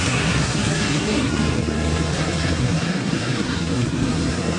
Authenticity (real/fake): fake